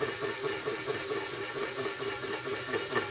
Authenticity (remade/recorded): recorded